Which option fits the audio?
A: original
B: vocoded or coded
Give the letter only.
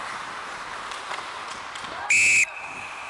A